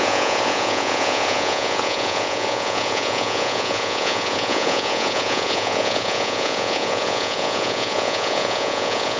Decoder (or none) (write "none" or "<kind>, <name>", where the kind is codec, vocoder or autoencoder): vocoder, Vocos